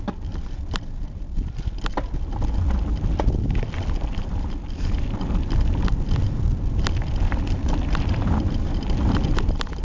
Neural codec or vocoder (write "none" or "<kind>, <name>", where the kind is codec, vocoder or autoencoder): none